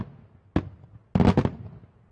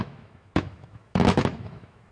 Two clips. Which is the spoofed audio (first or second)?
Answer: second